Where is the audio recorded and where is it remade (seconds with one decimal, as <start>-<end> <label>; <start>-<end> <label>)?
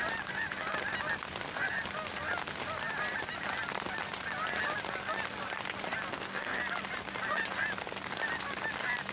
0.0-6.1 recorded; 6.1-6.6 remade; 6.6-9.1 recorded